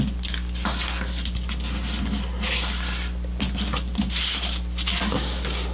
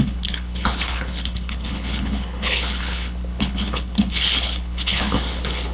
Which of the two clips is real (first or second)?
first